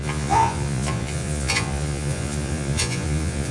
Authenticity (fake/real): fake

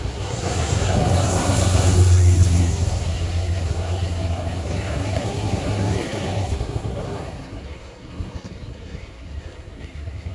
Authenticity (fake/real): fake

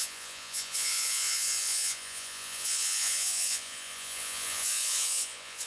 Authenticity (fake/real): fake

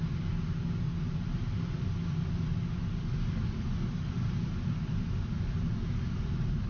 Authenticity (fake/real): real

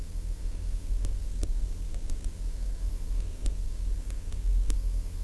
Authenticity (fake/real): fake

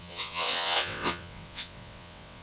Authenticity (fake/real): fake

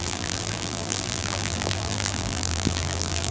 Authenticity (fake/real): fake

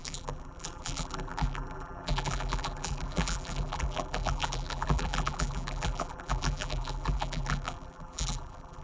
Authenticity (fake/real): fake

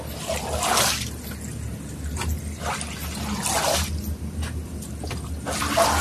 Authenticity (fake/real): real